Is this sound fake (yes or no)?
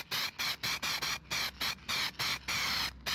no